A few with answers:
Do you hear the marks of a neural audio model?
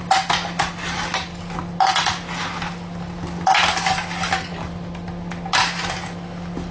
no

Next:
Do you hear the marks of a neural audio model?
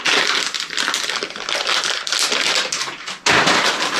no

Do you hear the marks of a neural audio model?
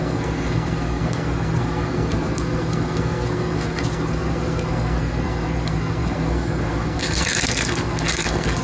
yes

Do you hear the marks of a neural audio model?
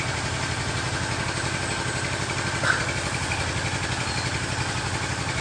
no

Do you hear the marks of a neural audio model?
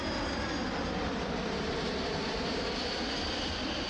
no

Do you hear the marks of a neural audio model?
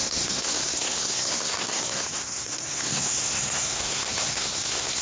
yes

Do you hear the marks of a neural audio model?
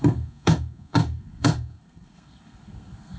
yes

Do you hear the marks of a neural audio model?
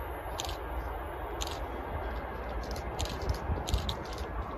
no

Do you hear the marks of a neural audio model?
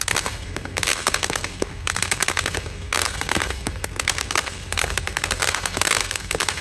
yes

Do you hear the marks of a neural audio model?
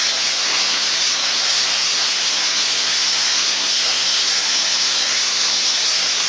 yes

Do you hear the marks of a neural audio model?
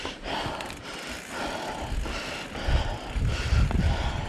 no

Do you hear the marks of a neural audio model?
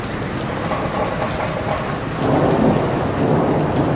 no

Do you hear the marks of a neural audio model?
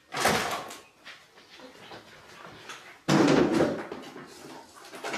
no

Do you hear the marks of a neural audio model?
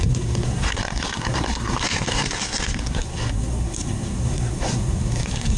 yes